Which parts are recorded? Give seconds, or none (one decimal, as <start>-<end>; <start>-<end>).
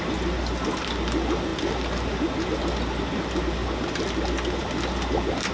0.0-5.5